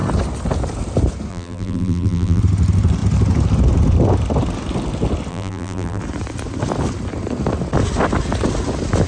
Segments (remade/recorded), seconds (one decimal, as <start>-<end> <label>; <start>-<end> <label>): 0.0-1.3 recorded; 1.3-2.4 remade; 2.4-5.3 recorded; 5.3-6.0 remade; 6.0-9.1 recorded